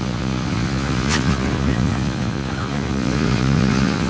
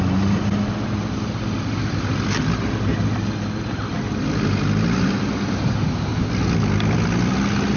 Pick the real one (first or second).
second